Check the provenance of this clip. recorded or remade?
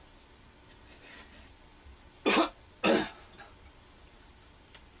recorded